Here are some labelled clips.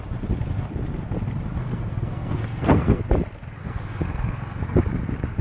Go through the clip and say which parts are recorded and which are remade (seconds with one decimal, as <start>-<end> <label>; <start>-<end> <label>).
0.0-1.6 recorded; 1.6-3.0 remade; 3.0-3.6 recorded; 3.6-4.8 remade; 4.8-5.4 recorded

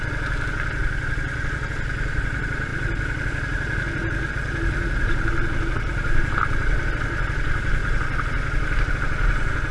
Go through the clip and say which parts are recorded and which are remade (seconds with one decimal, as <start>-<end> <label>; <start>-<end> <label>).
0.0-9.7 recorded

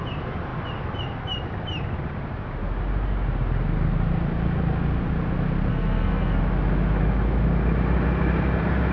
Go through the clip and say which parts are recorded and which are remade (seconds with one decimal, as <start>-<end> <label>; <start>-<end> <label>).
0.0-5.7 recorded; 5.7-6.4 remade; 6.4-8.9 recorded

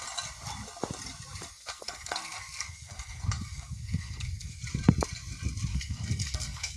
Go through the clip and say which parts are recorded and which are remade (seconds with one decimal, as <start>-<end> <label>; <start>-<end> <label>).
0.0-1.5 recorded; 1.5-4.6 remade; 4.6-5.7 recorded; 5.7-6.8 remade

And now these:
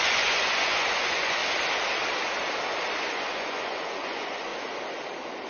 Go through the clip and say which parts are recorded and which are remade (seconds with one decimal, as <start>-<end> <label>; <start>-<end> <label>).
0.0-1.4 remade; 1.4-3.0 recorded; 3.0-4.5 remade; 4.5-5.5 recorded

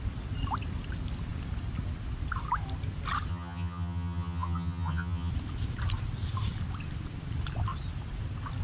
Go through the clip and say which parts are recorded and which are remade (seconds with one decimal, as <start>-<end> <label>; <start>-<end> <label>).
0.0-3.3 recorded; 3.3-5.3 remade; 5.3-8.6 recorded